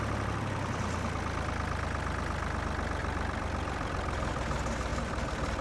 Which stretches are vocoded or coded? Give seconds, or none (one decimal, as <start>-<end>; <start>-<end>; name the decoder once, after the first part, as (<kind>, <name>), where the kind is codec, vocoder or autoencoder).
3.0-4.3 (vocoder, BigVGAN v2); 4.9-5.6